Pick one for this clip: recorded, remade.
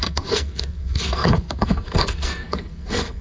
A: remade